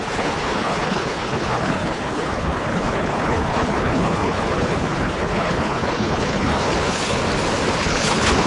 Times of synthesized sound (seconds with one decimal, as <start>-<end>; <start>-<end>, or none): 0.0-7.2; 7.8-8.5